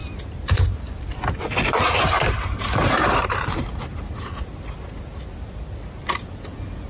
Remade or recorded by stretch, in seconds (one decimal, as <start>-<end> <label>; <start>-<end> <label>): 0.0-1.8 recorded; 1.8-3.6 remade; 3.6-6.9 recorded